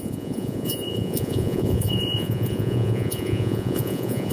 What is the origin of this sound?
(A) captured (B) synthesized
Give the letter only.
B